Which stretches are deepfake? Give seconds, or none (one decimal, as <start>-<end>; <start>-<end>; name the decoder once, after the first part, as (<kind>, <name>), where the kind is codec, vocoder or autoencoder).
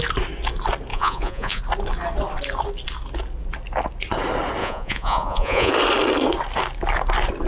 0.9-1.6 (vocoder, Vocos); 4.6-5.7